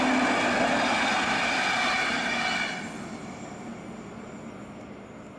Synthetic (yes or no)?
no